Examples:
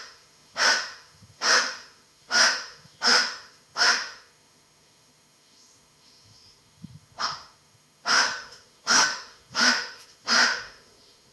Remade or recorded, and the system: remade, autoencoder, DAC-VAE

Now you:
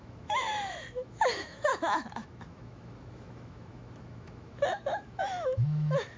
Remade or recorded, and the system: remade, autoencoder, DAC-VAE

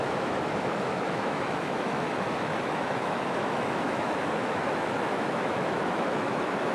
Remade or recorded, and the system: remade, autoencoder, DAC-VAE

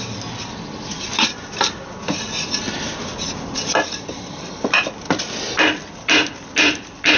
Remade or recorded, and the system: recorded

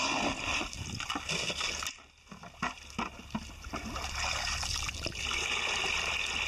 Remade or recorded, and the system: recorded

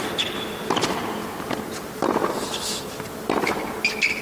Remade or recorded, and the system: recorded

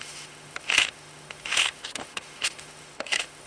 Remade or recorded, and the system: remade, autoencoder, DAC-VAE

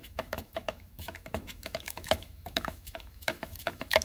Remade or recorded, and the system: remade, autoencoder, DAC-VAE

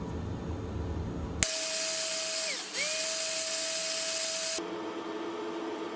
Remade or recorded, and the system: recorded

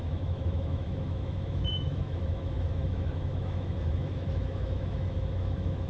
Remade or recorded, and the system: remade, autoencoder, DAC-VAE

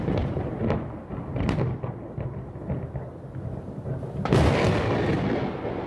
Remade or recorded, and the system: recorded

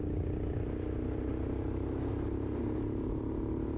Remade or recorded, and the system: recorded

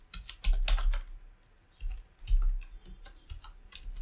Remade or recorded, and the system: recorded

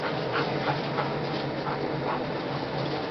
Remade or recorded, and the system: recorded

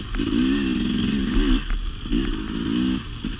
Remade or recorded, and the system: recorded